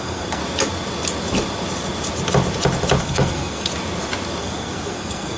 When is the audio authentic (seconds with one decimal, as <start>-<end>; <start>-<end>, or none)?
0.4-3.0; 3.7-4.4